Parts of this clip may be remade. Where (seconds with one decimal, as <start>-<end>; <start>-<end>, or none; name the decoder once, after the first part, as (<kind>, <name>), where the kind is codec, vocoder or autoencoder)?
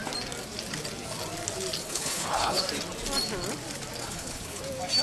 1.8-2.6 (codec, HILCodec); 4.0-4.6